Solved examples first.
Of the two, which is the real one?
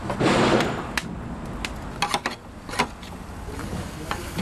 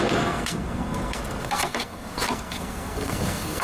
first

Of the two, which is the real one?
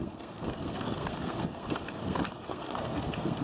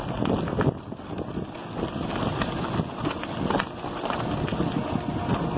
second